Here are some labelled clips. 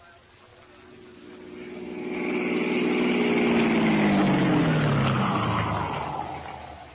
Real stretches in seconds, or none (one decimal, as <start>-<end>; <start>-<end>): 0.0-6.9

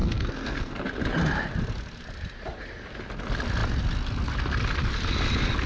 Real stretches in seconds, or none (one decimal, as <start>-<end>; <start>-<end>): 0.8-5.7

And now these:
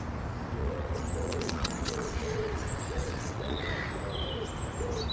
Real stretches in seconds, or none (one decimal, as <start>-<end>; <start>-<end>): 0.0-0.6; 3.7-5.1

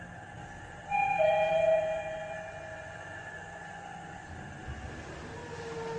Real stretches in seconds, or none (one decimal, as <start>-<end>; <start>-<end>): 0.0-0.9; 4.2-6.0